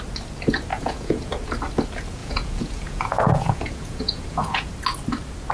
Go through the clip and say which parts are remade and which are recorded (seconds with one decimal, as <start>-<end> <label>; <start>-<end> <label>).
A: 0.0-0.7 recorded; 0.7-1.3 remade; 1.3-2.2 recorded; 2.2-4.7 remade; 4.7-5.5 recorded